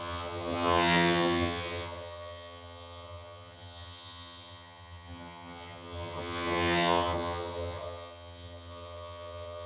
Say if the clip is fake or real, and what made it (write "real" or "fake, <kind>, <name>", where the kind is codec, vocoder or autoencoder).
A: fake, vocoder, HiFi-GAN